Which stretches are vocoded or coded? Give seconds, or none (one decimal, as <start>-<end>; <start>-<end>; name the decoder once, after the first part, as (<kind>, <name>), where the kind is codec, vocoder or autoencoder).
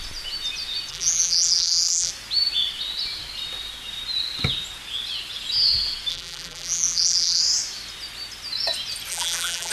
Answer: 0.9-2.1 (vocoder, BigVGAN v2); 6.1-7.4; 9.1-9.7